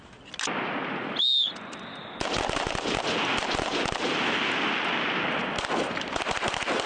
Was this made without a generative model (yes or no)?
yes